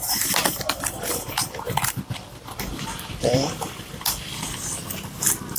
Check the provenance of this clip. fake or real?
fake